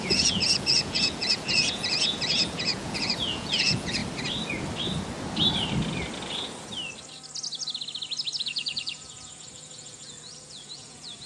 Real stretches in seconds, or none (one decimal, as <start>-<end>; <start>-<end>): 4.0-8.4